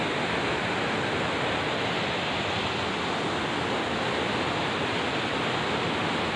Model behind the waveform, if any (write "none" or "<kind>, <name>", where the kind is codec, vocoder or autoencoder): none